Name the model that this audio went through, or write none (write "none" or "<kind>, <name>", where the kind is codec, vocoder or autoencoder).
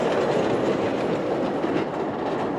none